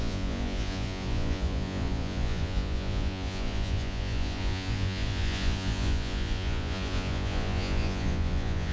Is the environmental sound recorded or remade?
remade